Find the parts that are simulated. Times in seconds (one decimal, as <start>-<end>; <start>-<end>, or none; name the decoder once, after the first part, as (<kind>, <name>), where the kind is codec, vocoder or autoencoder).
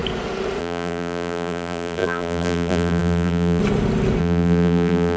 0.6-3.6 (vocoder, BigVGAN v2); 4.2-5.2